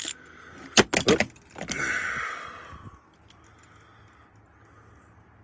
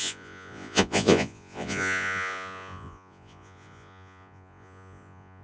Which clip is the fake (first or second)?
second